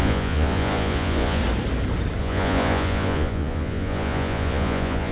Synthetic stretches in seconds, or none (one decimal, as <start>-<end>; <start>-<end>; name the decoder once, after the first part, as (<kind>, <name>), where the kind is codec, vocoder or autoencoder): 0.0-1.4 (vocoder, Vocos); 2.2-5.1